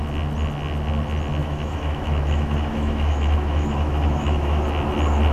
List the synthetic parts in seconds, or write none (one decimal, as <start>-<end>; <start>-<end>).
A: 1.4-4.6